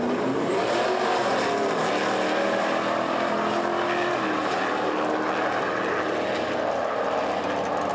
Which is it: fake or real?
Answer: real